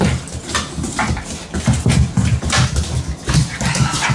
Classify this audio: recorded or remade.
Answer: recorded